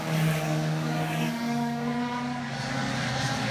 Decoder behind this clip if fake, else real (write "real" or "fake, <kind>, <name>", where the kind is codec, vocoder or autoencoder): fake, codec, DAC